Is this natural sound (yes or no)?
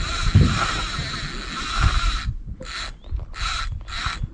yes